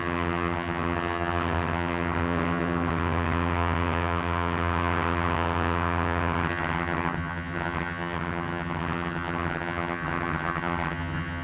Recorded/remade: remade